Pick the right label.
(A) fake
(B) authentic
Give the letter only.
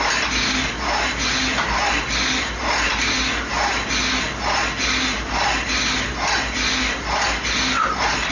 B